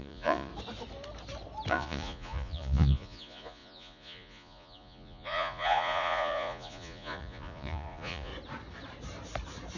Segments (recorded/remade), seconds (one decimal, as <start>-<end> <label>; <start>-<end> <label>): 0.0-0.5 remade; 0.5-1.7 recorded; 1.7-8.3 remade; 8.3-9.8 recorded